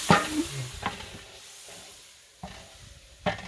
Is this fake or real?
real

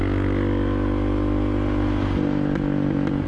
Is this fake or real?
real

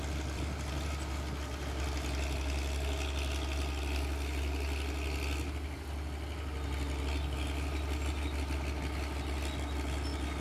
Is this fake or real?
real